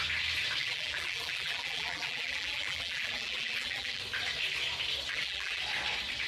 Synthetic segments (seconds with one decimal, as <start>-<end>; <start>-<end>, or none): 0.6-4.0; 5.1-5.6